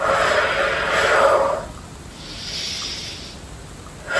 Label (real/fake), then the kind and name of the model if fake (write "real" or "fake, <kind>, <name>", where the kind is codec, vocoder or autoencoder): real